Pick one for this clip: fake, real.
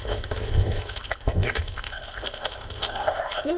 fake